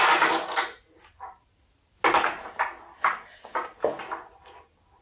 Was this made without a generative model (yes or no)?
yes